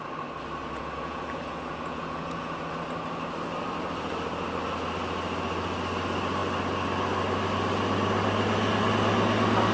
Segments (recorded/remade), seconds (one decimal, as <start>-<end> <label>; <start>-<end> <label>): 0.0-0.6 recorded; 0.6-2.7 remade; 2.7-9.7 recorded